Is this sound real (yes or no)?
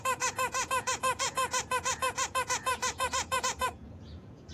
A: no